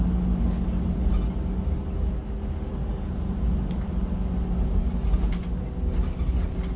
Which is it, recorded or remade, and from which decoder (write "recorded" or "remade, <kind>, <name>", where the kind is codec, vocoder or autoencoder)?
recorded